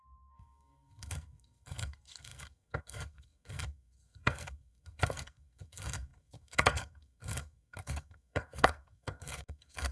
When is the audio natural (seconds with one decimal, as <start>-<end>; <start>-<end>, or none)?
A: none